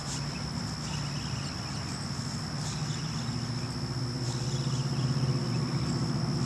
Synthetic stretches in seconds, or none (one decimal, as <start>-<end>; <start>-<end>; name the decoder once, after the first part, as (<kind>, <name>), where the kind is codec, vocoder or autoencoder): none